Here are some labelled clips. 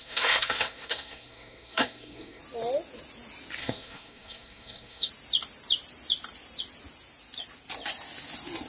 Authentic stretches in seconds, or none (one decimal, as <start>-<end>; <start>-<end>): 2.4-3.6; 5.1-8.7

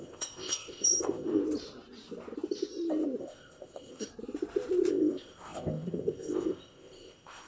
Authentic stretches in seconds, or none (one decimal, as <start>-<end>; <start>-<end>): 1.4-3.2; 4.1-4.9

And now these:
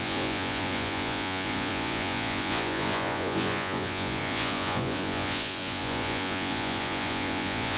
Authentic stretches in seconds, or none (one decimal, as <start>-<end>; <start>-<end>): none

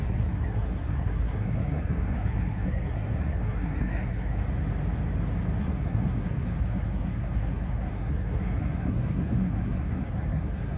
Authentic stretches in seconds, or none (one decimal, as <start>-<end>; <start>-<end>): 4.4-5.6

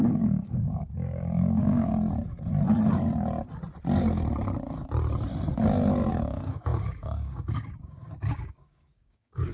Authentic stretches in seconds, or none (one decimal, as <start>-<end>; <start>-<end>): 1.9-6.1